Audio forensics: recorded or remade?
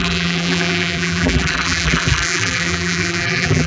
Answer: remade